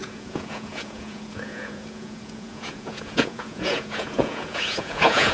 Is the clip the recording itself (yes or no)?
no